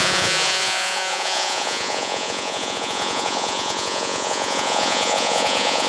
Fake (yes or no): yes